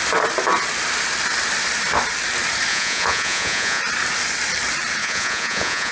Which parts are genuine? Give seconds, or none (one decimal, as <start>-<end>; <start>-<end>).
0.0-2.7; 3.8-5.0